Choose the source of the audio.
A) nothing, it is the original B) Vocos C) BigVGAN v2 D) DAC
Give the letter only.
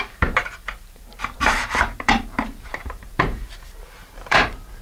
C